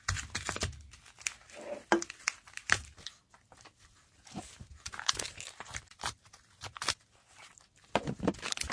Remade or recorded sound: recorded